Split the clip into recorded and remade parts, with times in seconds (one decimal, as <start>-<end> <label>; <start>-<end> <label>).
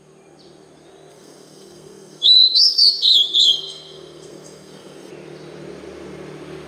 0.0-1.1 recorded; 1.1-5.1 remade; 5.1-6.7 recorded